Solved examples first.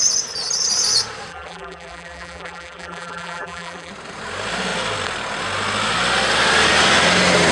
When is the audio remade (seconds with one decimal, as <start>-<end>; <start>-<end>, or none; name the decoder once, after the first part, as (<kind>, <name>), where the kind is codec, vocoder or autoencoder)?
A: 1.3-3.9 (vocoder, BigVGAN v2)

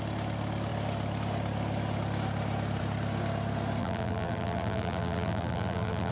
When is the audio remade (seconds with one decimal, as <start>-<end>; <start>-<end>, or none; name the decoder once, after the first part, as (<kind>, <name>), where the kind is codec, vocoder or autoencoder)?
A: 3.8-6.1 (vocoder, BigVGAN v2)

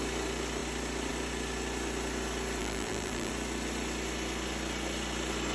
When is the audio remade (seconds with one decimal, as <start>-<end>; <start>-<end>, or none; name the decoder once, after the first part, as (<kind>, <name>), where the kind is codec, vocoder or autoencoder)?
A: 2.6-3.3 (vocoder, BigVGAN v2)

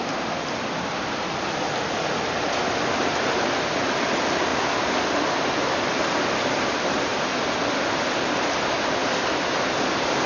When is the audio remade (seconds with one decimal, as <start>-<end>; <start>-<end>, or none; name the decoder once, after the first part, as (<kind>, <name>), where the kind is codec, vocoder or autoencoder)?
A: 0.0-7.1 (vocoder, BigVGAN v2); 8.5-10.3

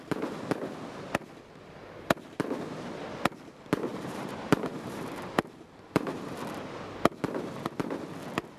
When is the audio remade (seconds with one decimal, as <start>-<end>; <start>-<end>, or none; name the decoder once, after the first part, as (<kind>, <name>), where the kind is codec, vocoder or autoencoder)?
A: 3.9-6.3 (vocoder, BigVGAN v2)